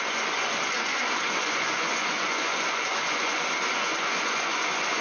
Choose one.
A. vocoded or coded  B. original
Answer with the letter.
A